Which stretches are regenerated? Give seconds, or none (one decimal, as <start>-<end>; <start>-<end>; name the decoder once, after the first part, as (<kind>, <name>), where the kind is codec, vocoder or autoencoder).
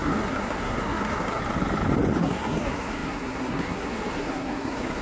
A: 0.0-1.4 (codec, SNAC); 2.2-5.0